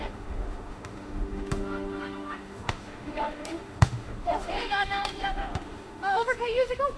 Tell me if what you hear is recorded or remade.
remade